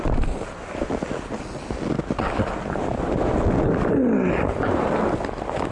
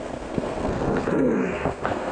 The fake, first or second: second